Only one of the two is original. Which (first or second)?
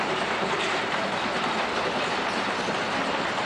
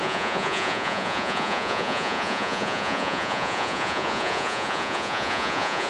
first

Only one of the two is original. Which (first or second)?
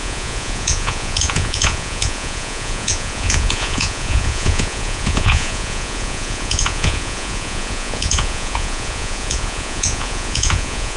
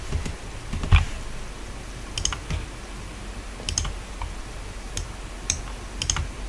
second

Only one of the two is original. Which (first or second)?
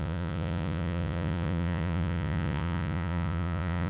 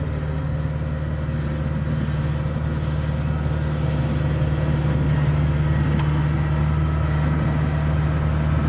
second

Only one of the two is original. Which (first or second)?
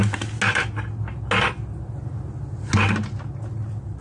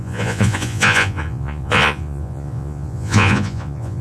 first